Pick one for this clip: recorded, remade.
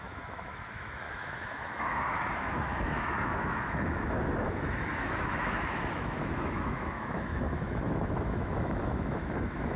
remade